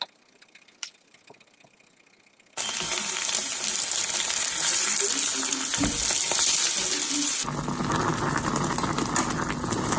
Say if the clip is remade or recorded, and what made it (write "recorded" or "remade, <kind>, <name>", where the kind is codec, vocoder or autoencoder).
recorded